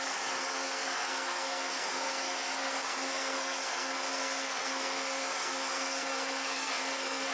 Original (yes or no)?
no